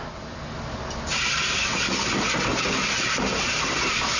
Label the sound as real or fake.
real